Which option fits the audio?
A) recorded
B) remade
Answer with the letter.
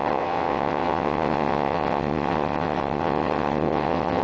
B